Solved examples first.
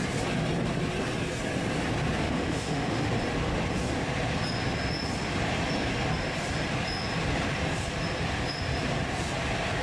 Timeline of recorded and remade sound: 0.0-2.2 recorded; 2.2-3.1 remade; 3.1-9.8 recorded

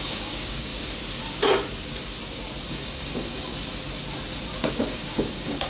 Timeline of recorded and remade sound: 0.0-0.7 remade; 0.7-2.7 recorded; 2.7-3.5 remade; 3.5-4.7 recorded; 4.7-5.7 remade

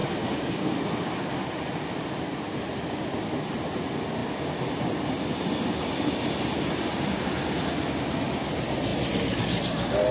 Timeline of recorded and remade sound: 0.0-10.1 recorded

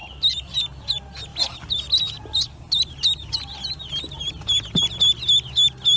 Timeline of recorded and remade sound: 0.0-6.0 recorded

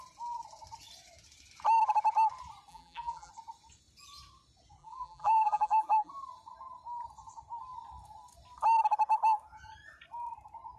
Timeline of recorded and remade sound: 0.0-2.7 recorded; 2.7-3.3 remade; 3.3-4.8 recorded; 4.8-6.1 remade; 6.1-10.8 recorded

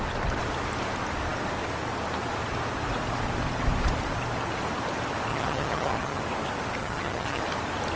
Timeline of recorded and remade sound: 0.0-5.3 recorded; 5.3-6.2 remade; 6.2-6.8 recorded; 6.8-7.4 remade; 7.4-8.0 recorded

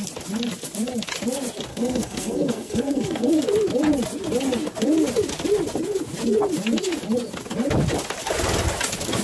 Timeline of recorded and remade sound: 0.0-1.7 recorded; 1.7-3.3 remade; 3.3-9.2 recorded